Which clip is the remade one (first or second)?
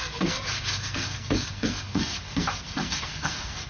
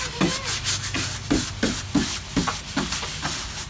first